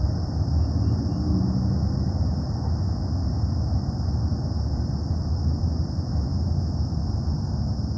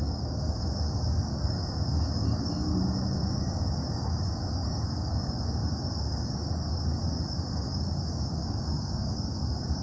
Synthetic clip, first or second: second